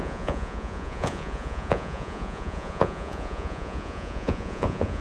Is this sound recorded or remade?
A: remade